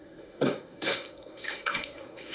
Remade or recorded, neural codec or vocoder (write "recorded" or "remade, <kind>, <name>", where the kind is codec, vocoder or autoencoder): remade, codec, SNAC